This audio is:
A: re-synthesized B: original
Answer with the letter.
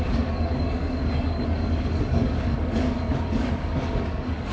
A